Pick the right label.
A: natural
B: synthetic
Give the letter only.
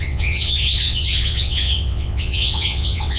B